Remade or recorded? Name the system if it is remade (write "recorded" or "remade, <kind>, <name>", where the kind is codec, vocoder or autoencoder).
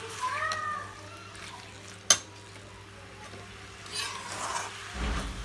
recorded